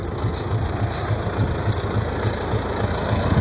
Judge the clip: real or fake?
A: real